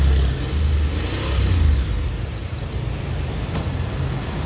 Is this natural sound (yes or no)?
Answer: yes